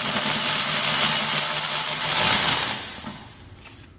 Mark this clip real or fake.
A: real